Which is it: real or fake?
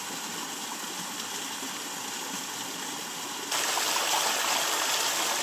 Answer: real